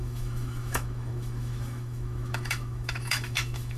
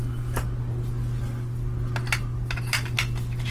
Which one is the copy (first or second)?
first